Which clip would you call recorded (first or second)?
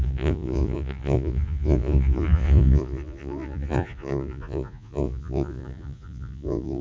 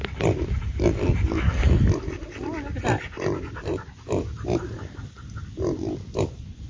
second